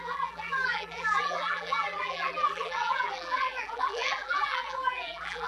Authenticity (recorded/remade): remade